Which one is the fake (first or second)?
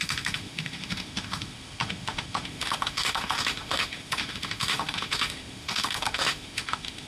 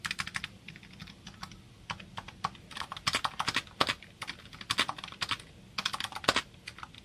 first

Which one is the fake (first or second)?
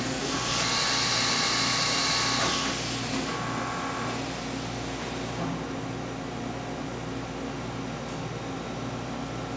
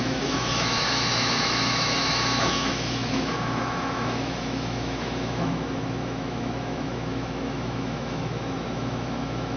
second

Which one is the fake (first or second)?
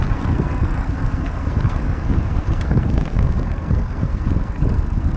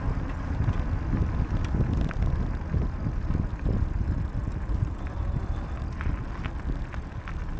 first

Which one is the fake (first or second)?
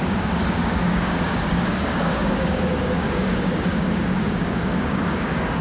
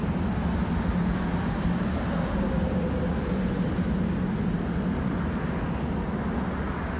first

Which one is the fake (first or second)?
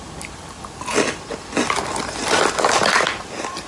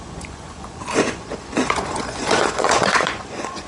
second